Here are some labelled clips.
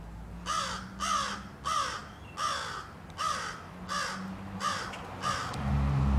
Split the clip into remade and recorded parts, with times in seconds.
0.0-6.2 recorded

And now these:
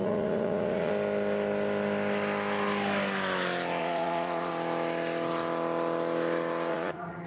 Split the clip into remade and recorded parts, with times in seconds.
0.0-0.9 remade; 0.9-3.8 recorded; 3.8-4.5 remade; 4.5-6.7 recorded; 6.7-7.3 remade

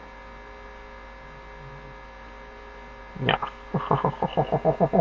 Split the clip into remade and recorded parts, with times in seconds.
0.0-5.0 recorded

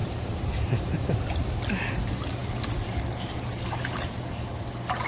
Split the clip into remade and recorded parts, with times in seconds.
0.0-1.2 remade; 1.2-2.4 recorded; 2.4-4.6 remade; 4.6-5.1 recorded

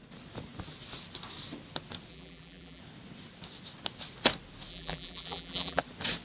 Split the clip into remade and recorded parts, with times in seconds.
0.0-2.1 recorded; 2.1-2.8 remade; 2.8-4.7 recorded; 4.7-5.8 remade; 5.8-6.2 recorded

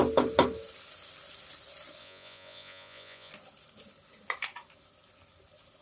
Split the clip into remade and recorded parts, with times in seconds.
0.0-2.0 recorded; 2.0-3.3 remade; 3.3-5.8 recorded

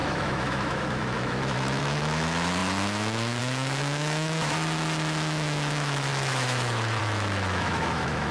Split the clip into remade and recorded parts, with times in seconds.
0.0-8.3 remade

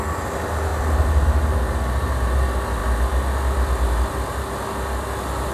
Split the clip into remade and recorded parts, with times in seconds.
0.0-0.7 recorded; 0.7-2.3 remade; 2.3-5.5 recorded